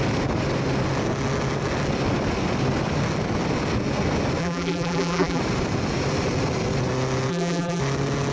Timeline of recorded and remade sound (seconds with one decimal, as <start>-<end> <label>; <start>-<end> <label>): 0.0-4.4 recorded; 4.4-5.4 remade; 5.4-7.3 recorded; 7.3-7.8 remade; 7.8-8.3 recorded